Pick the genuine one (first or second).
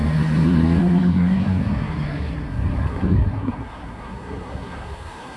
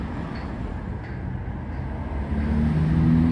second